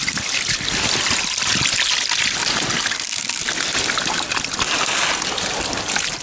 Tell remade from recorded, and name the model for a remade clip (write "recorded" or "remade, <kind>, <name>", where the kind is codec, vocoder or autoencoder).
recorded